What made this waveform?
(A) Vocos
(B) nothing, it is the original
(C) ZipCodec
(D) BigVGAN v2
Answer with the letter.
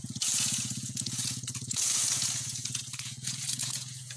A